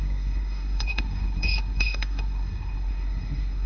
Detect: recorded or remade remade